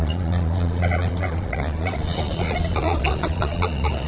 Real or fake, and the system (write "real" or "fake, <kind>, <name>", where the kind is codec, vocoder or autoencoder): fake, vocoder, Vocos